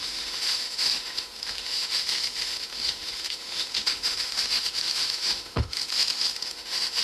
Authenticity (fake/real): fake